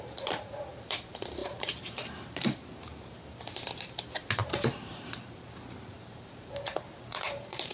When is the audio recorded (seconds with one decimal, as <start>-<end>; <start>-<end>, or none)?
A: none